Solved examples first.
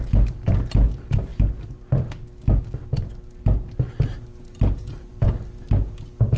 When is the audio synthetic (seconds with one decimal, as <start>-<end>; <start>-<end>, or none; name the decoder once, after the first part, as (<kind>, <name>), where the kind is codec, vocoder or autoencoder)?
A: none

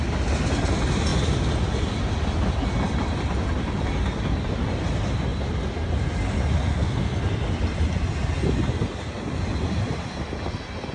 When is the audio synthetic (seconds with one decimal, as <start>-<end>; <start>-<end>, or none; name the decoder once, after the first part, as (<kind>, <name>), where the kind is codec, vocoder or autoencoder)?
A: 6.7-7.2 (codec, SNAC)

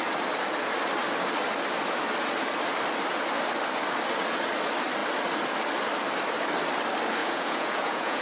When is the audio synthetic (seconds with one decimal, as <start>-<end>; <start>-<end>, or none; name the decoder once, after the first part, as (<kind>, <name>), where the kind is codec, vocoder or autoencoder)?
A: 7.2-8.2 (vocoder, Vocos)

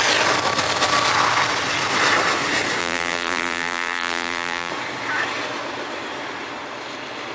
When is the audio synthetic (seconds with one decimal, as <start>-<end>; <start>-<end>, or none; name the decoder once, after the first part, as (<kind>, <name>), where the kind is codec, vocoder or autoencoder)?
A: 2.8-4.7 (vocoder, BigVGAN v2)